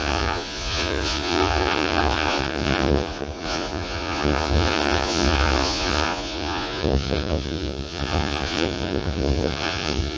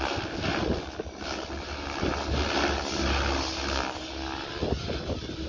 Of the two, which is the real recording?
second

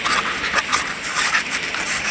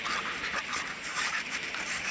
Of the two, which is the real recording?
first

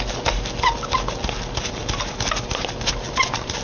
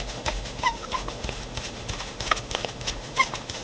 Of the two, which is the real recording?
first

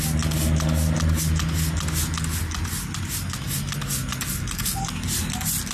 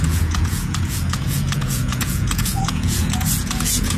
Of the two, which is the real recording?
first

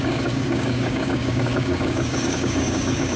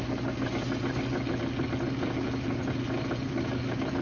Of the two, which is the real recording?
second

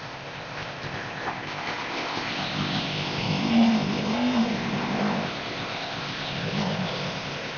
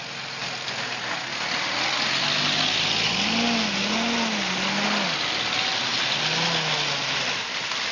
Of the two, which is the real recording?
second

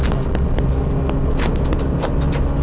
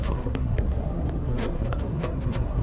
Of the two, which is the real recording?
first